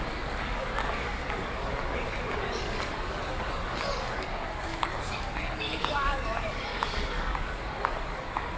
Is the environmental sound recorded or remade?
remade